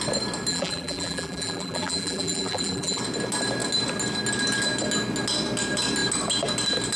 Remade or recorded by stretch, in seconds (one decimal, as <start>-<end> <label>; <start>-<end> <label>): 0.0-0.5 recorded; 0.5-3.0 remade; 3.0-7.0 recorded